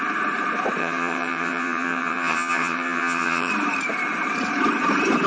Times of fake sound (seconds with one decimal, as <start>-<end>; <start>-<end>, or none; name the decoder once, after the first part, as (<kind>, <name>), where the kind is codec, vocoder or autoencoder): 0.8-3.5 (vocoder, HiFi-GAN)